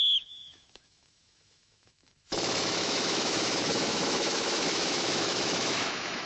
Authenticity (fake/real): fake